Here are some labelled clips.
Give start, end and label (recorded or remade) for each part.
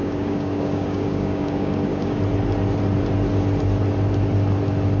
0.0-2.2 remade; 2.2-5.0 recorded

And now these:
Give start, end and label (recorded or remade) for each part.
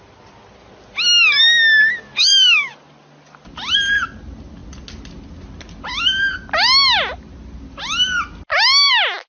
0.0-2.2 recorded; 2.2-2.7 remade; 2.7-9.3 recorded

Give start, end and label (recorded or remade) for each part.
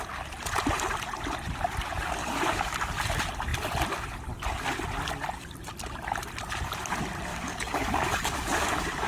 0.0-2.2 recorded; 2.2-2.9 remade; 2.9-7.3 recorded; 7.3-9.1 remade